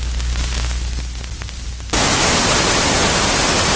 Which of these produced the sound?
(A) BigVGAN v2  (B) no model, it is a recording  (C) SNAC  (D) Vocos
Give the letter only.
B